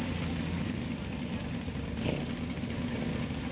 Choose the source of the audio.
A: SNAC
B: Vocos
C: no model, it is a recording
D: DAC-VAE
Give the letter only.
C